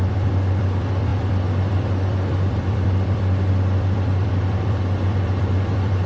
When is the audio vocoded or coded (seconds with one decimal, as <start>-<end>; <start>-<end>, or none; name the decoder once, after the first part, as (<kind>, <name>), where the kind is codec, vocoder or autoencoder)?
0.0-6.1 (vocoder, BigVGAN v2)